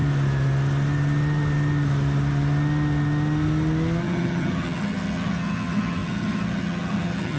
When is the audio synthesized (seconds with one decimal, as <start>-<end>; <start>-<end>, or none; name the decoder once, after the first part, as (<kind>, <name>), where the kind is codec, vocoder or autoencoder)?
4.0-7.4 (vocoder, HiFi-GAN)